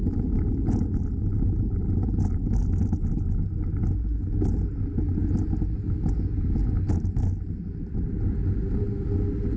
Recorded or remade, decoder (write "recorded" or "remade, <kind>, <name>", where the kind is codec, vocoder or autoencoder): recorded